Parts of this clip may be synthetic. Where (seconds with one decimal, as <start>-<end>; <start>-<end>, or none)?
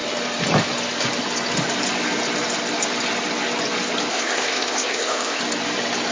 4.1-5.4